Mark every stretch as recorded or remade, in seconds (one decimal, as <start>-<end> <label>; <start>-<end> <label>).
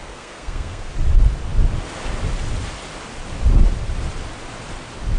0.0-0.9 remade; 0.9-5.2 recorded